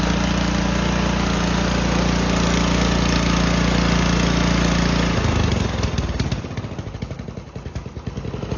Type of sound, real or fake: real